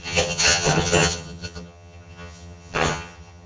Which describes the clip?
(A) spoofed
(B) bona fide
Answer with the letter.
A